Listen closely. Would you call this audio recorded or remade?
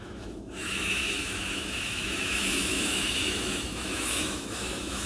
remade